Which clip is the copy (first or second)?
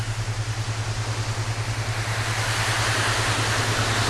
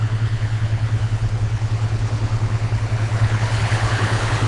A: second